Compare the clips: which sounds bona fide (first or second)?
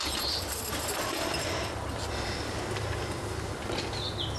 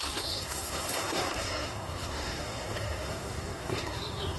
first